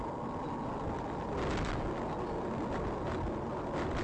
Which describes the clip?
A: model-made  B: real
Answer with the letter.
B